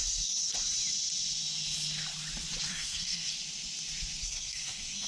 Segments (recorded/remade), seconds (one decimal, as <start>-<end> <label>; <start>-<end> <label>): 0.0-0.5 remade; 0.5-2.7 recorded; 2.7-3.3 remade; 3.3-4.2 recorded; 4.2-5.1 remade